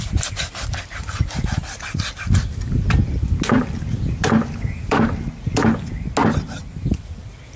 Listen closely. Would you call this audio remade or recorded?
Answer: recorded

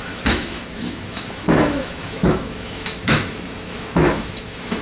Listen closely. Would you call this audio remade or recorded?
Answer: remade